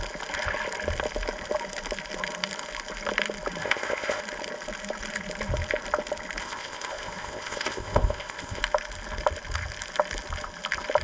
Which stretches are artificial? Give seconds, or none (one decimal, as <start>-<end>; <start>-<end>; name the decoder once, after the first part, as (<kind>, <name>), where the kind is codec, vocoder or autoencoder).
3.6-4.2 (codec, ZipCodec); 6.4-8.6